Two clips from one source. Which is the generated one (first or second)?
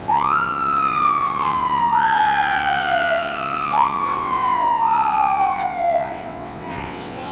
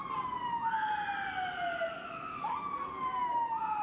first